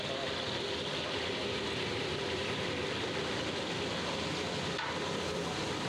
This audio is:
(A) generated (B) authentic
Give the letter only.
B